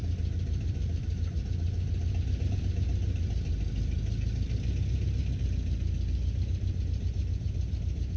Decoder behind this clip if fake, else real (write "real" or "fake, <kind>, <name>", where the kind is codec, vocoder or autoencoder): real